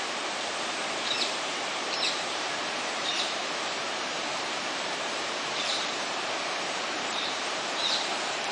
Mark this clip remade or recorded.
remade